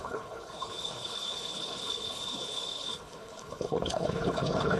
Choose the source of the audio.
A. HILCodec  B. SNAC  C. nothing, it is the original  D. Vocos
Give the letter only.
A